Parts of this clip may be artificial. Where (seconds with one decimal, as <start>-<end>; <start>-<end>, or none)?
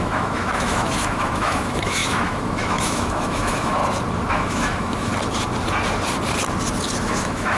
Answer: 0.0-3.8; 4.3-5.1; 7.0-7.6